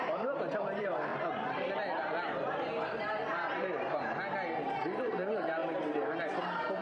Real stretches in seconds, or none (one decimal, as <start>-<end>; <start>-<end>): none